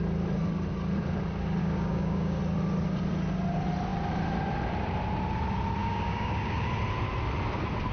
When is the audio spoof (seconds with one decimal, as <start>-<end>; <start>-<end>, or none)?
1.6-2.4; 5.8-6.7

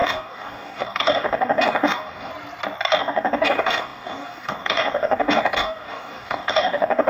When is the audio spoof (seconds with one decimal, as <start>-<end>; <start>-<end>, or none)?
0.0-2.3; 3.0-7.1

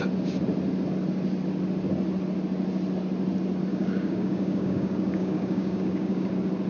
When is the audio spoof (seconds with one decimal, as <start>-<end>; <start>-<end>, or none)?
3.7-6.3

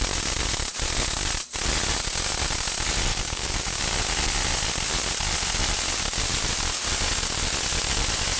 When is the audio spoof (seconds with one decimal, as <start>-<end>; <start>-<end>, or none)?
3.1-3.8

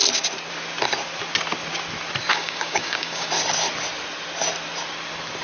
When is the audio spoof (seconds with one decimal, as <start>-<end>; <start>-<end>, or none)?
2.3-3.3

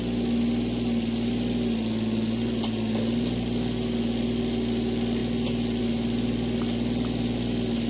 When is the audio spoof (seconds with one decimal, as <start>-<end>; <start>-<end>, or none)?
none